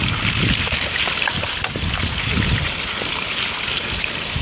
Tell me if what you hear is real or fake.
real